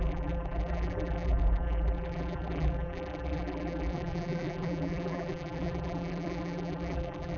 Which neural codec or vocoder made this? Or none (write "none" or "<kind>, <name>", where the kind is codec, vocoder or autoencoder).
vocoder, BigVGAN v2